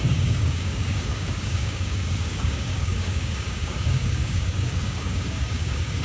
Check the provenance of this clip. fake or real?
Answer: fake